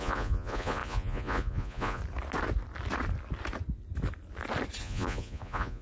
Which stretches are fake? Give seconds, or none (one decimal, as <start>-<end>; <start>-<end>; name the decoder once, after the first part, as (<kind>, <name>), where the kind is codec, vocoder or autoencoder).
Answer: 0.0-2.0 (vocoder, Vocos); 4.8-5.8